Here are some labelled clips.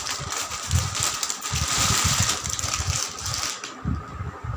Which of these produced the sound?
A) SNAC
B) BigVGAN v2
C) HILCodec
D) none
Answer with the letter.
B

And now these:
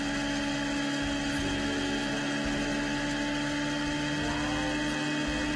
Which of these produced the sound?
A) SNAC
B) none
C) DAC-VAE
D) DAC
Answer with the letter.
B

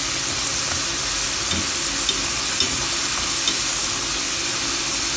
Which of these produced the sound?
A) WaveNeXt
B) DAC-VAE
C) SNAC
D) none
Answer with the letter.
D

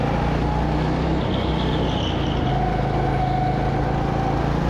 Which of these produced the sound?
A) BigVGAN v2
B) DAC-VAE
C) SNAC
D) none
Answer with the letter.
D